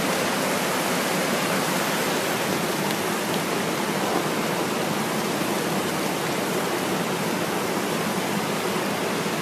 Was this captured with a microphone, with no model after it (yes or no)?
yes